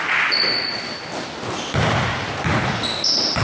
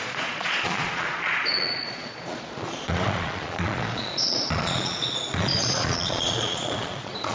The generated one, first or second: second